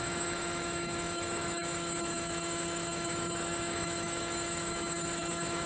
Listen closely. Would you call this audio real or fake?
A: fake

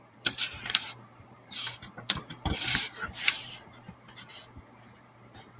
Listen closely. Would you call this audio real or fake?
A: fake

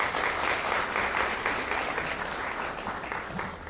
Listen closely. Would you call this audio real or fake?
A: real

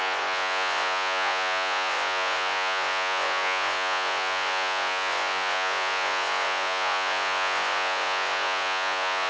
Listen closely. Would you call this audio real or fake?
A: fake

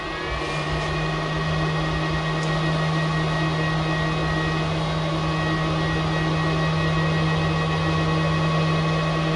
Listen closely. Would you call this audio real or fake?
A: real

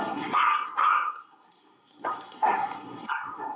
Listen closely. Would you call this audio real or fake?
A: fake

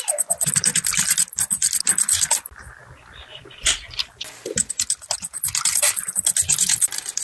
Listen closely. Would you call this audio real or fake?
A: real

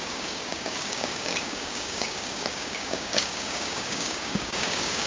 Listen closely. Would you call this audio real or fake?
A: fake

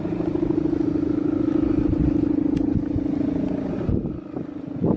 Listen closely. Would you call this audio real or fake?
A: real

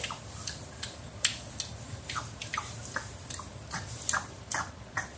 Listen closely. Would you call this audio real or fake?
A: real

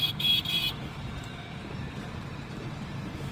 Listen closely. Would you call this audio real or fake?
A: fake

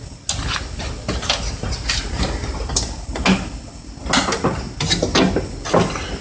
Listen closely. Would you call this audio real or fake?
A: real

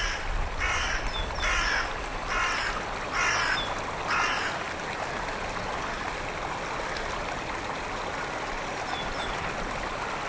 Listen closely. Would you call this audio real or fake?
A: real